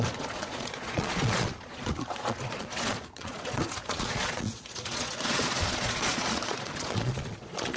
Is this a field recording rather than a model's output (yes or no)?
no